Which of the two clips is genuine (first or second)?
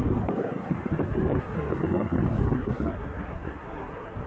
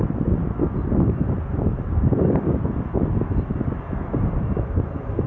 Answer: second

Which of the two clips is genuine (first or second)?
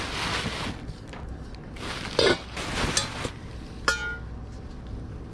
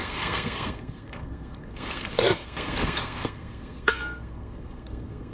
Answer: first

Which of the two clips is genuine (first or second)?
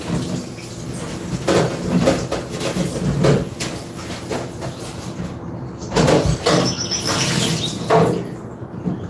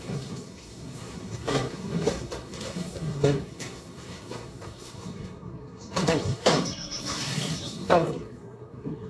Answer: first